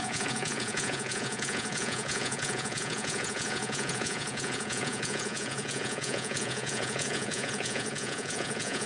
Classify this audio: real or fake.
fake